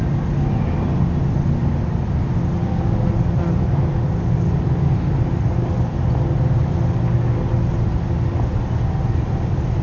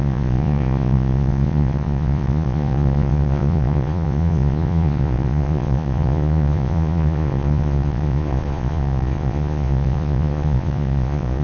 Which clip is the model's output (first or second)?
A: second